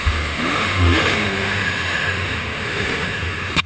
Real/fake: fake